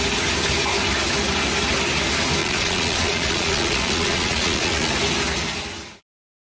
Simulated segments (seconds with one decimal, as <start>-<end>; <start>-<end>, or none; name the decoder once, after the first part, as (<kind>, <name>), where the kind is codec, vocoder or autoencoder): 2.4-4.9 (vocoder, Vocos)